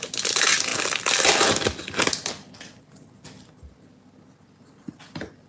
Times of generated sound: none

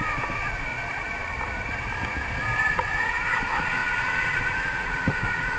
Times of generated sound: 0.0-0.7 (vocoder, Vocos); 2.7-5.6

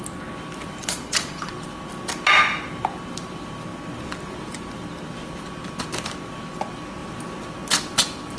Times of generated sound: 0.8-1.5 (vocoder, Vocos)

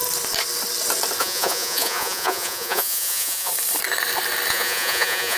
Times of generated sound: 1.2-3.5 (vocoder, Vocos); 4.5-5.4